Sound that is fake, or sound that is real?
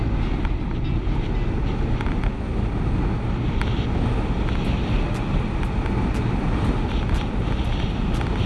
real